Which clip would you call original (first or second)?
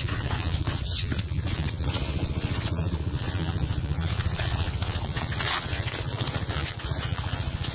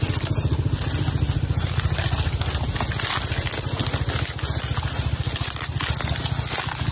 second